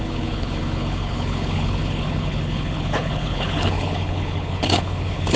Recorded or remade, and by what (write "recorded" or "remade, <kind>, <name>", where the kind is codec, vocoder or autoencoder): remade, codec, HILCodec